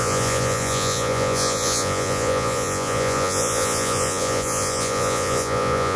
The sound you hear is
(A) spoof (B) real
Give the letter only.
A